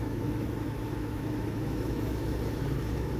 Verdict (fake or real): fake